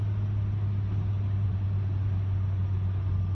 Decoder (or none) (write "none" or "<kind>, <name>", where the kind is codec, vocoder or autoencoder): none